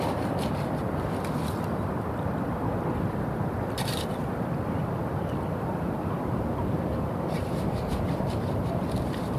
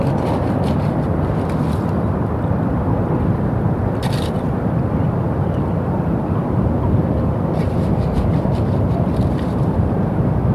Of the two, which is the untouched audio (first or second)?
second